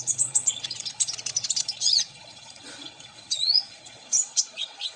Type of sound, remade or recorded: remade